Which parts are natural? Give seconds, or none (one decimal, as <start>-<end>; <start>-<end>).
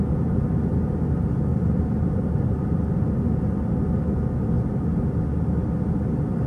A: 0.0-1.5; 2.9-6.5